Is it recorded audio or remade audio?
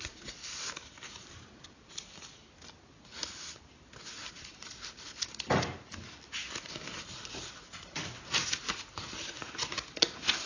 recorded